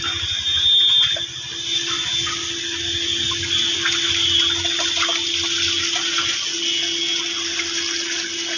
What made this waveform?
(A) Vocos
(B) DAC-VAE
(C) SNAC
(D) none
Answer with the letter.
D